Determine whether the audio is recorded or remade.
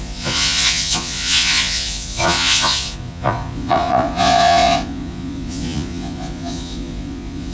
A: remade